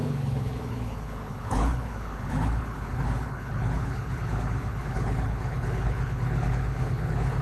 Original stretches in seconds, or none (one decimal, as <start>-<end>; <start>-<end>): none